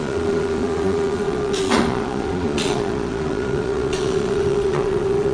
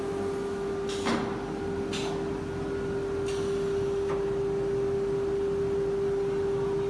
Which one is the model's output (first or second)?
first